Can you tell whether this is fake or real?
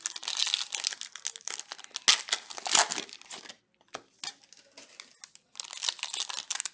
real